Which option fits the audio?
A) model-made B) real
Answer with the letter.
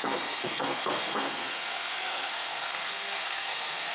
A